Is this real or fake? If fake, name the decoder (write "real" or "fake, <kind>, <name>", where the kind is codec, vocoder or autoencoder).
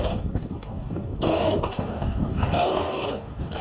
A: fake, codec, DAC